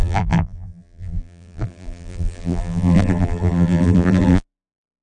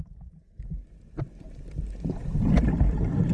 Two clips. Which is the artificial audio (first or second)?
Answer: first